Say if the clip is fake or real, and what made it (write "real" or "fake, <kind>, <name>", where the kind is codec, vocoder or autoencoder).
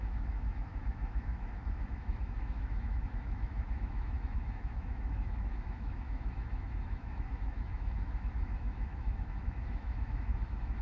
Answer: fake, autoencoder, DAC-VAE